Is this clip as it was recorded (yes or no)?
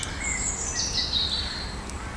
yes